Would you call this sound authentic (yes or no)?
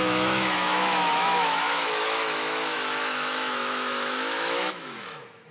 no